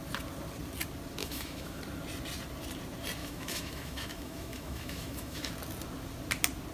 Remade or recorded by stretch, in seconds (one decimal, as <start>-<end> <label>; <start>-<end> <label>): 0.0-1.2 recorded; 1.2-1.8 remade; 1.8-3.2 recorded; 3.2-5.5 remade; 5.5-6.7 recorded